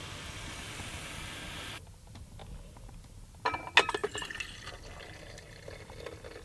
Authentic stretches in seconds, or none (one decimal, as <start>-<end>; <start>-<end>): 0.0-6.4